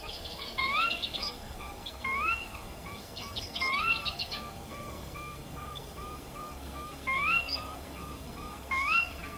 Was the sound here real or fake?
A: fake